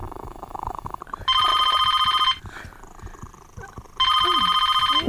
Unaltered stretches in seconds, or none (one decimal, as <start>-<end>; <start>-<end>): 1.0-5.1